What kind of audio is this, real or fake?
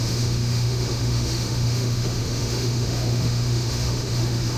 fake